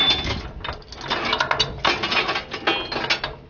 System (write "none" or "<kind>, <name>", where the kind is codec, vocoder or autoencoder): none